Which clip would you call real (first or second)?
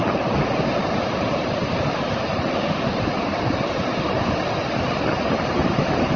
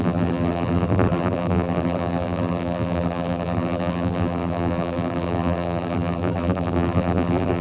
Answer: first